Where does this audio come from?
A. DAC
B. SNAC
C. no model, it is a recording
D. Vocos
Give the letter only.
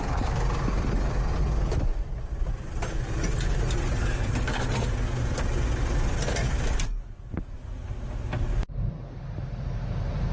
C